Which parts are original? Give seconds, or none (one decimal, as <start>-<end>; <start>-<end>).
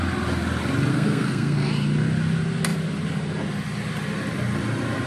0.0-0.9; 1.7-5.1